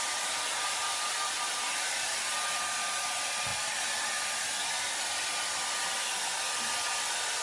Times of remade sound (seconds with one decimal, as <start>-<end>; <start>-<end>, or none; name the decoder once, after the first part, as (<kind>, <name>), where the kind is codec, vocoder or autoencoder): 0.5-1.1 (vocoder, BigVGAN v2)